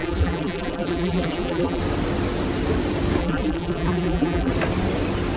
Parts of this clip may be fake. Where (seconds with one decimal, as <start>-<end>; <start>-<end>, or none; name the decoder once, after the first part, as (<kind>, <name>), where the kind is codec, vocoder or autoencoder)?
0.0-1.8 (vocoder, BigVGAN v2); 3.2-4.5